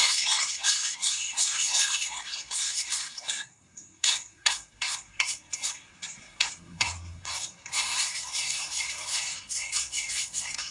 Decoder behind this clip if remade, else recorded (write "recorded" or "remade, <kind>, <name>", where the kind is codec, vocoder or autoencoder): remade, codec, SNAC